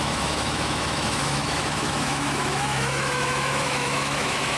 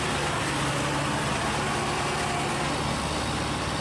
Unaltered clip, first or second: second